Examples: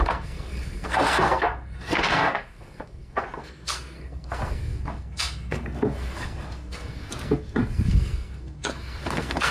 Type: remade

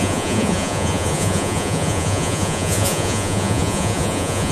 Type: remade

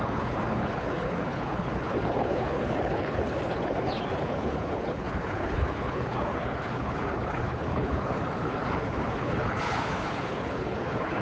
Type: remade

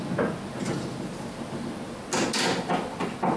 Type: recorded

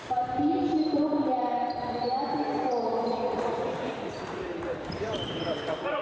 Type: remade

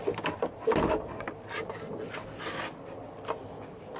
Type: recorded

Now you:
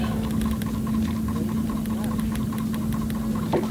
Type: recorded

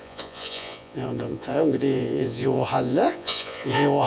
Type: remade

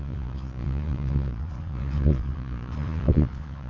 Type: remade